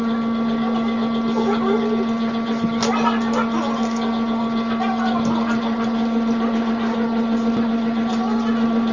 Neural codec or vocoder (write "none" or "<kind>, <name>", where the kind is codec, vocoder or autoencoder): none